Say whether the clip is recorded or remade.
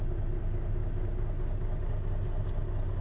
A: recorded